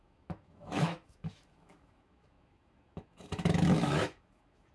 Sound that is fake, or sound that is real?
fake